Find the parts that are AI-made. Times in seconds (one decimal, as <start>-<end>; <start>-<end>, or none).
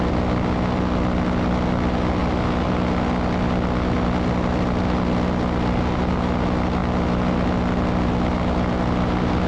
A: none